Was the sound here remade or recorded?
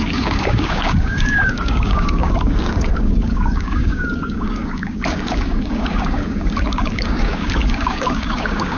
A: remade